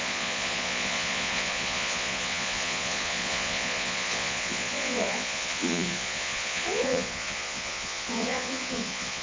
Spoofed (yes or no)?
yes